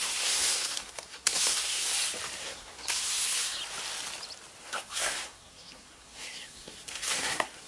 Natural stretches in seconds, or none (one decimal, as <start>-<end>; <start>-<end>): 1.9-2.4; 3.6-4.6